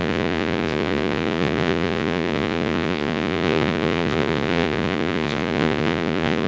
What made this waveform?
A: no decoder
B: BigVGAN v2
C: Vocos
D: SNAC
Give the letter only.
C